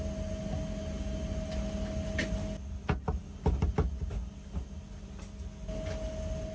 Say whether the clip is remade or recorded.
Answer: recorded